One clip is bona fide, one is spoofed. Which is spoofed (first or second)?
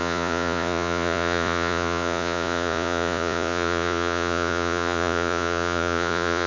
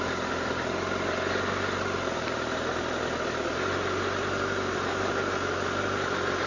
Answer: first